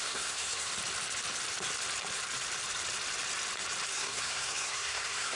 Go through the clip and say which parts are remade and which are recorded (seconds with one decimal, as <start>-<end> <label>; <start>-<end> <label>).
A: 0.0-0.7 remade; 0.7-3.9 recorded; 3.9-5.4 remade